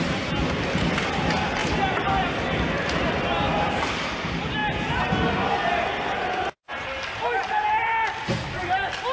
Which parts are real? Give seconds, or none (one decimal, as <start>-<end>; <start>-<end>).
0.0-1.6; 3.7-9.1